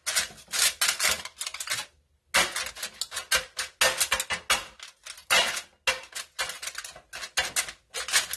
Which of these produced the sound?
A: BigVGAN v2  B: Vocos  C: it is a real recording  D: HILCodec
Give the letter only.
C